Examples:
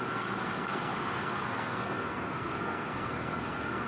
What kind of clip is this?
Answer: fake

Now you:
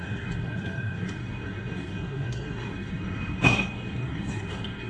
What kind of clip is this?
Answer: fake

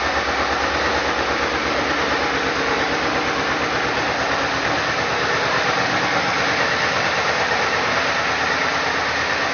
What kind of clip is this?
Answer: real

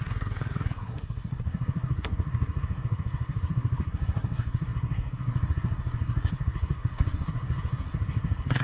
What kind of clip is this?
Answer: fake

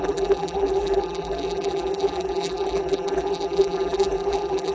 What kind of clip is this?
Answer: fake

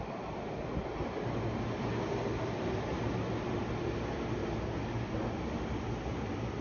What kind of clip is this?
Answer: real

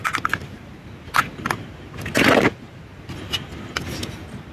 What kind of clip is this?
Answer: real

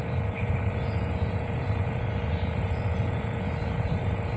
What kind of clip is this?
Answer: fake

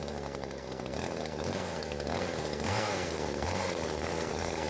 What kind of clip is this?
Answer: fake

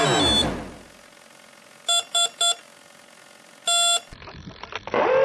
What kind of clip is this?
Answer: real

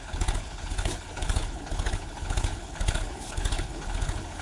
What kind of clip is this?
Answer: fake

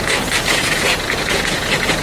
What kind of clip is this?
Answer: fake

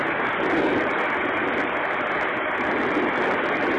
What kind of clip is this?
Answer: real